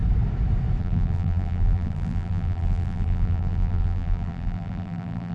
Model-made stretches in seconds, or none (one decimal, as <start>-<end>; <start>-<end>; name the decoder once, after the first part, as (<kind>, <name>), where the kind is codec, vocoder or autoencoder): 0.8-5.3 (vocoder, BigVGAN v2)

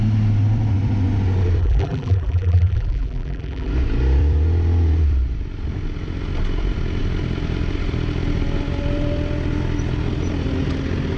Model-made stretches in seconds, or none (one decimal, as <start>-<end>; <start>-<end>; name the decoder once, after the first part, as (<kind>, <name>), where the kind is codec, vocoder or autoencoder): 1.6-3.7 (vocoder, BigVGAN v2)

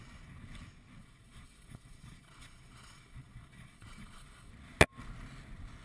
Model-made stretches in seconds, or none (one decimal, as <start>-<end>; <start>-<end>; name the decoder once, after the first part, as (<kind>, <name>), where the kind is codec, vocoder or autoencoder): 1.0-4.5 (vocoder, Vocos)

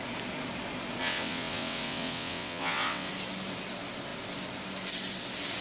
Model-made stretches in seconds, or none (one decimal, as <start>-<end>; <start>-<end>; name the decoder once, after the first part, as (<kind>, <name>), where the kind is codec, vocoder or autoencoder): 1.0-3.1 (vocoder, WaveNeXt)

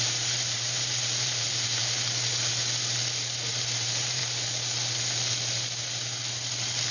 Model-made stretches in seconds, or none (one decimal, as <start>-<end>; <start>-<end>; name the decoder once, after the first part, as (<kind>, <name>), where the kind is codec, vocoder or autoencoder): 0.0-1.8 (vocoder, BigVGAN v2); 3.5-4.2

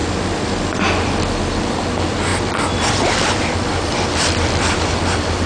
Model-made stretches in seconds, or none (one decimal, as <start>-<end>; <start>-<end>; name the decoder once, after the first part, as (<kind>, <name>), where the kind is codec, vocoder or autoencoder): 0.0-0.5 (vocoder, BigVGAN v2); 2.3-5.0